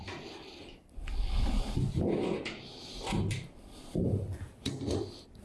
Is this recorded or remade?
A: recorded